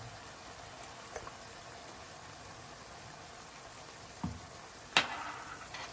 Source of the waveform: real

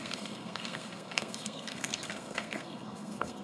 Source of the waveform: fake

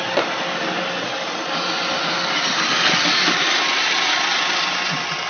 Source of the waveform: real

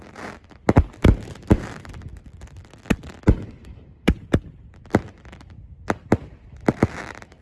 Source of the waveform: fake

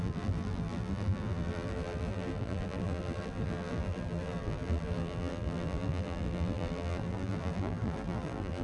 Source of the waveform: fake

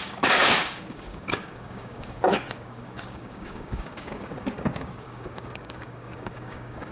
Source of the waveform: fake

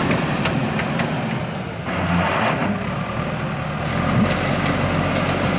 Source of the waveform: real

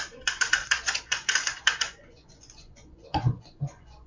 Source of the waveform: fake